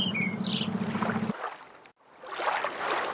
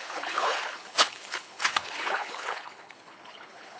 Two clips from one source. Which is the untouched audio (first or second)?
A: first